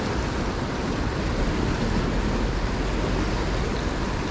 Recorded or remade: recorded